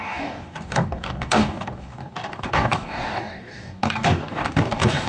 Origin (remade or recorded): remade